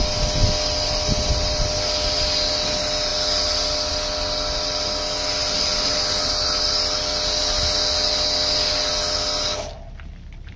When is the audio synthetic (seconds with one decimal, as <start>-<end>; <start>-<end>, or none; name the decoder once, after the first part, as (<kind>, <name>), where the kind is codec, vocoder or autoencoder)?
none